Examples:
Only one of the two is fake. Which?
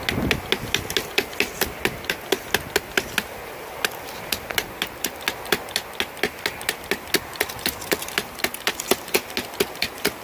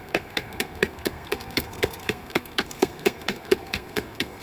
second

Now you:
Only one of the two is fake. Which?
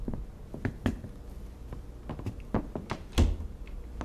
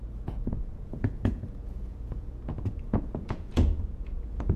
second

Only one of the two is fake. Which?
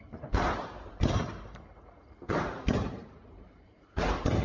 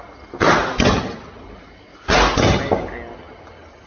first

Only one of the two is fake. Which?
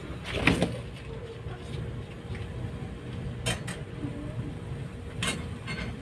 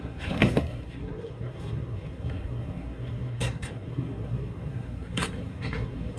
second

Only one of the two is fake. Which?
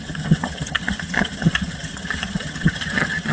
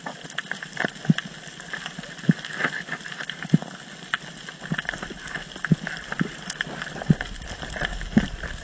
first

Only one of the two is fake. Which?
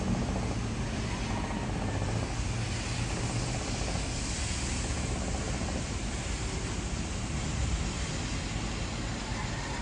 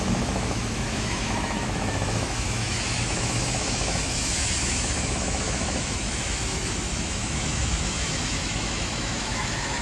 second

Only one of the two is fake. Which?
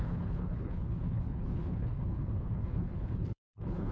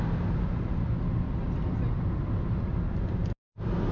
first